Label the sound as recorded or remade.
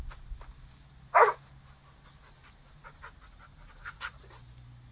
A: recorded